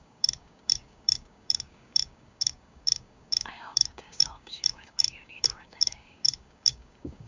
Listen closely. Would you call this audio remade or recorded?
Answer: remade